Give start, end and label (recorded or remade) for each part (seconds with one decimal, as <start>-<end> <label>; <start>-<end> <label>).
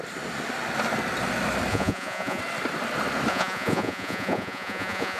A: 0.0-1.7 recorded; 1.7-2.4 remade; 2.4-3.3 recorded; 3.3-5.2 remade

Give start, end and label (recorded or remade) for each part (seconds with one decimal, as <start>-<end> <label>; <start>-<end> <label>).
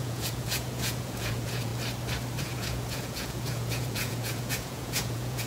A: 0.0-1.7 remade; 1.7-2.4 recorded; 2.4-5.5 remade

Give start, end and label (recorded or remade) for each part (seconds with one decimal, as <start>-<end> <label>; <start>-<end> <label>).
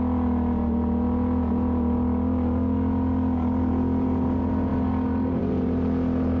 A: 0.0-6.4 recorded